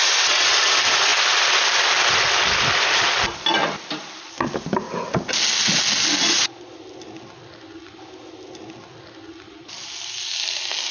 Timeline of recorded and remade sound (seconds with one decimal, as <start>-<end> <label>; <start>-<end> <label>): 0.0-6.2 recorded; 6.2-6.7 remade; 6.7-10.9 recorded